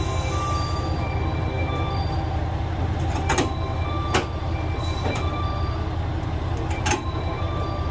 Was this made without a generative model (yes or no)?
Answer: yes